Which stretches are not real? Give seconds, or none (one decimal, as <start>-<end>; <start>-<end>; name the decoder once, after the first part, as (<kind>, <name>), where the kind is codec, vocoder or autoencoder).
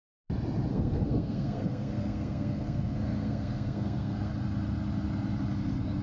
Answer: 0.7-4.3 (codec, SNAC)